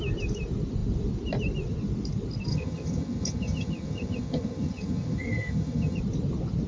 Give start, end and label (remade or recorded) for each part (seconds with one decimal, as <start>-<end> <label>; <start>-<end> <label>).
0.0-2.5 recorded; 2.5-6.0 remade; 6.0-6.7 recorded